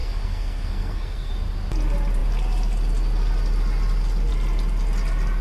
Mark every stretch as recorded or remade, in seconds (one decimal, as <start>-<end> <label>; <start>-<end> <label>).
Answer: 0.0-1.3 remade; 1.3-5.4 recorded